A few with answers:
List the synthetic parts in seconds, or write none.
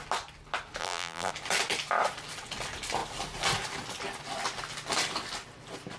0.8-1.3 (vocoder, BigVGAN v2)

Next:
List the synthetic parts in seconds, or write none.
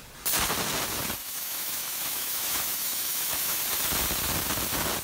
1.2-3.6 (autoencoder, DAC-VAE)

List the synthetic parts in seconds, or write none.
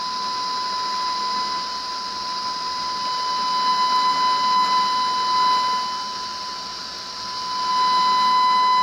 none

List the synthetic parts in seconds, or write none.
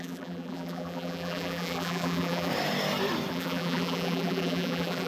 0.0-2.5 (vocoder, BigVGAN v2); 3.3-5.1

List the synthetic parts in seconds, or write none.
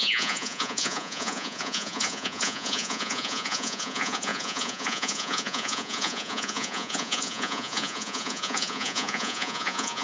0.0-10.0 (vocoder, Vocos)